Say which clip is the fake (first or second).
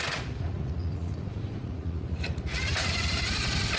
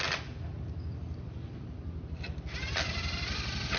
first